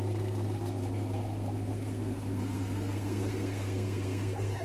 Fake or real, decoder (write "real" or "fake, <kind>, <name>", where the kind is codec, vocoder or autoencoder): fake, codec, SNAC